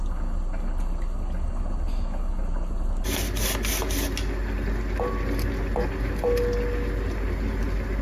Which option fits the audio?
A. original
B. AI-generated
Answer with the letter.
A